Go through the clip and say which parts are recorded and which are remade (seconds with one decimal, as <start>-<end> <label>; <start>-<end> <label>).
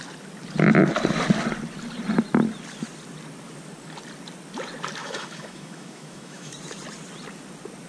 0.0-5.0 recorded; 5.0-6.5 remade; 6.5-7.9 recorded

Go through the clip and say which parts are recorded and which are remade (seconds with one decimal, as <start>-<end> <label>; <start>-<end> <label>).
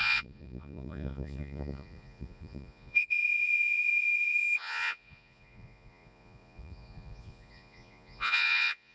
0.0-8.9 remade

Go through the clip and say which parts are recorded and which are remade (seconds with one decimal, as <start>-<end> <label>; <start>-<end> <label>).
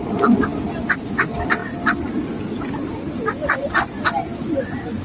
0.0-5.0 recorded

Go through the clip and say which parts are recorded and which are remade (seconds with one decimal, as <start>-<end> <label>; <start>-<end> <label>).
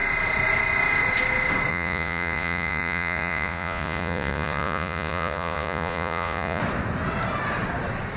0.0-1.7 recorded; 1.7-6.6 remade; 6.6-8.2 recorded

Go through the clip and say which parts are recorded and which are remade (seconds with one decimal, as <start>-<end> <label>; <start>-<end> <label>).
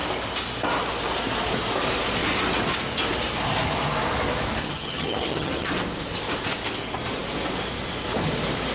0.0-4.6 recorded; 4.6-5.7 remade; 5.7-8.7 recorded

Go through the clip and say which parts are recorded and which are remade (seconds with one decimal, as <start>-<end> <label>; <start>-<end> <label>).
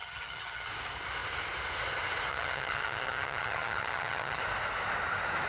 0.0-0.7 remade; 0.7-2.3 recorded; 2.3-4.4 remade; 4.4-5.5 recorded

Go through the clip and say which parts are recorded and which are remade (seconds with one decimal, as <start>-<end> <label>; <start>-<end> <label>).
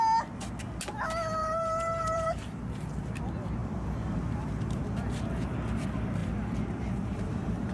0.0-1.4 recorded; 1.4-2.7 remade; 2.7-3.6 recorded; 3.6-4.8 remade; 4.8-6.2 recorded; 6.2-7.7 remade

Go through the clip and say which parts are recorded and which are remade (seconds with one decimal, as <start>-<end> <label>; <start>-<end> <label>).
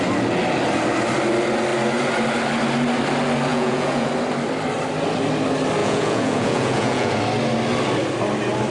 0.0-3.5 recorded; 3.5-4.1 remade; 4.1-5.8 recorded; 5.8-7.2 remade; 7.2-8.7 recorded